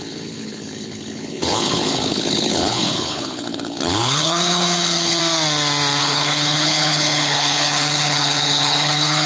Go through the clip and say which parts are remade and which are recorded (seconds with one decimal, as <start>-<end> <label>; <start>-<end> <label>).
0.0-5.2 remade; 5.2-6.0 recorded; 6.0-9.3 remade